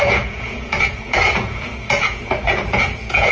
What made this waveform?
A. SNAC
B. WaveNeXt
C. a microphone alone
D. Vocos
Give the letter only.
D